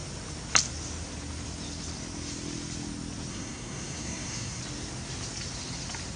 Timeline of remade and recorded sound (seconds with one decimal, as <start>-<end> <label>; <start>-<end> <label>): 0.0-3.3 recorded; 3.3-4.6 remade; 4.6-6.2 recorded